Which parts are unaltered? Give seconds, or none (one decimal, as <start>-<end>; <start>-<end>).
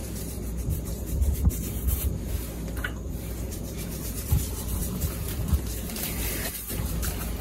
none